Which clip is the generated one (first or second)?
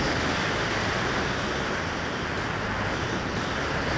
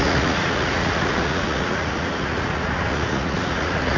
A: second